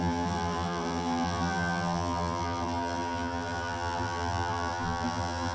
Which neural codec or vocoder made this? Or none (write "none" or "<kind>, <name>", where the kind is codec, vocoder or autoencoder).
vocoder, BigVGAN v2